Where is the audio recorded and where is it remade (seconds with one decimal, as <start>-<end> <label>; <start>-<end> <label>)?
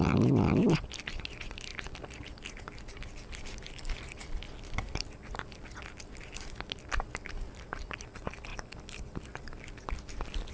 0.0-10.5 recorded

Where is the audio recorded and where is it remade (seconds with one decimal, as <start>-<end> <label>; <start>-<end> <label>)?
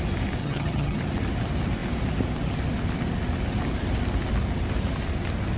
0.0-0.4 recorded; 0.4-1.0 remade; 1.0-5.6 recorded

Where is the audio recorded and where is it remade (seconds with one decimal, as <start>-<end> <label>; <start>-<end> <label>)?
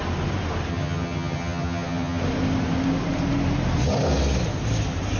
0.0-0.7 recorded; 0.7-2.2 remade; 2.2-5.2 recorded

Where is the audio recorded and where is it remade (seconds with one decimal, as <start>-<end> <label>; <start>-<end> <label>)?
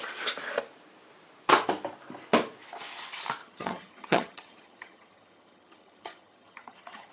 0.0-3.4 recorded; 3.4-7.1 remade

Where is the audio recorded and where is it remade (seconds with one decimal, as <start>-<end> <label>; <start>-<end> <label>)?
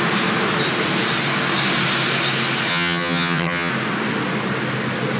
0.0-2.7 recorded; 2.7-3.7 remade; 3.7-5.2 recorded